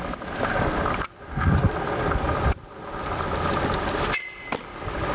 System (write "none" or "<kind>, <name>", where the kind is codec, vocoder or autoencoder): none